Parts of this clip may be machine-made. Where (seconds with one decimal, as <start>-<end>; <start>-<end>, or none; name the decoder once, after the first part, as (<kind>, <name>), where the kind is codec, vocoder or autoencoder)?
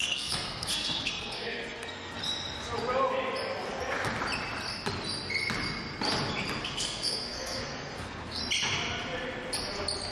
0.0-2.2 (codec, SNAC); 6.6-8.4